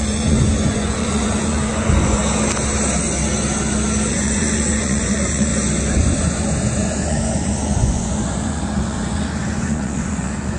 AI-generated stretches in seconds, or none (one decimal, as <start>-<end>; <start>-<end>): 0.0-2.2; 4.1-5.5; 6.0-10.6